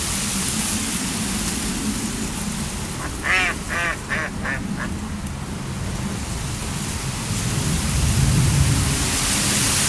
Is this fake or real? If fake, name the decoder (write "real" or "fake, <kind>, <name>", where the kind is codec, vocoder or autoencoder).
real